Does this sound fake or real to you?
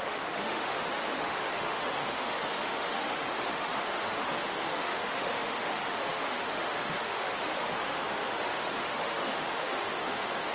fake